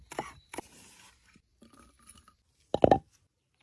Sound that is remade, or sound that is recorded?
recorded